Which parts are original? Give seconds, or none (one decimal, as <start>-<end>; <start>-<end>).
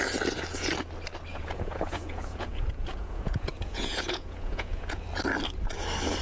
0.0-1.3; 5.0-6.2